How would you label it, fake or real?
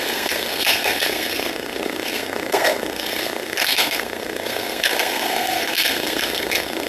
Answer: fake